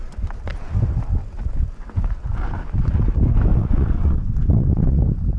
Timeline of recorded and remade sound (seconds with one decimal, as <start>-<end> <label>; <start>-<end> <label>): 0.0-3.5 recorded; 3.5-5.0 remade; 5.0-5.4 recorded